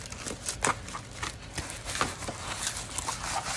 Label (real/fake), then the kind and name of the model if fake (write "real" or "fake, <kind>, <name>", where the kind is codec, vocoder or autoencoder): real